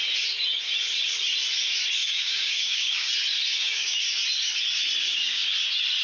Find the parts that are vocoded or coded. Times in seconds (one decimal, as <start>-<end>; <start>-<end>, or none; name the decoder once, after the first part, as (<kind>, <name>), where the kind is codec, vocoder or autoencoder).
2.0-3.1 (codec, DAC); 3.5-4.0; 5.0-5.5